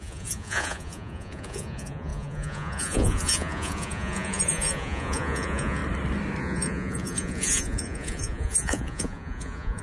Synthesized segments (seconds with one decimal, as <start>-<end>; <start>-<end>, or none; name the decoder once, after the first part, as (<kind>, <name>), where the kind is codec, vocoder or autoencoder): 0.0-5.8 (vocoder, Vocos); 6.4-9.8